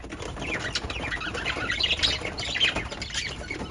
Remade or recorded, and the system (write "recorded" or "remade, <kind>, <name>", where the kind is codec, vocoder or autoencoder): recorded